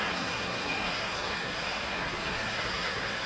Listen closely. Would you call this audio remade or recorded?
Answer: remade